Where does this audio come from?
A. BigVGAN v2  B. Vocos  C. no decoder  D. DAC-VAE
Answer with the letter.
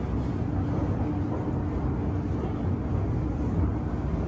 C